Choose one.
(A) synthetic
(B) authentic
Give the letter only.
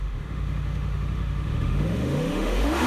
A